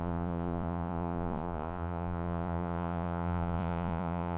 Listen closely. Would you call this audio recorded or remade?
remade